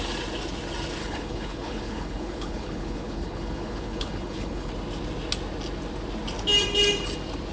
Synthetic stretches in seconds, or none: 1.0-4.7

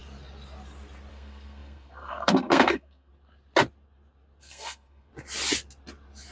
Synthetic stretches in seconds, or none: 1.1-3.1; 4.4-5.1

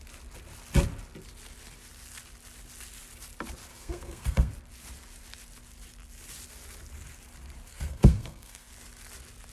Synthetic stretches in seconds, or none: 3.7-4.5; 7.7-8.7

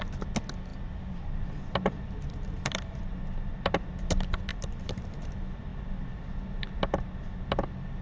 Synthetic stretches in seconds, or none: 0.7-3.7; 4.5-5.2

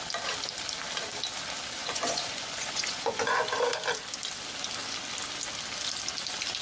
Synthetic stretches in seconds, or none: 1.8-3.4

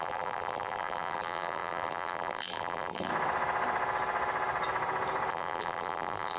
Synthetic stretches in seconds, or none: 0.0-3.1; 5.3-6.4

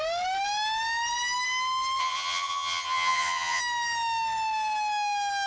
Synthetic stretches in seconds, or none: 2.0-3.6

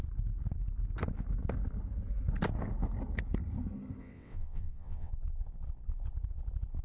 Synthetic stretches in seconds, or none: 4.0-5.1